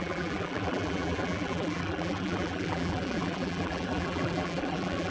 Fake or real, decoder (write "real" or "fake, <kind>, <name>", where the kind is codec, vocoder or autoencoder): fake, vocoder, BigVGAN v2